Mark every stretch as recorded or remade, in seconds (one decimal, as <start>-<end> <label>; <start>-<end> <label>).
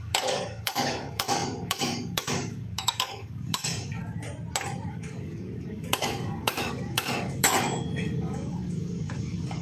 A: 0.0-4.0 remade; 4.0-4.9 recorded; 4.9-9.6 remade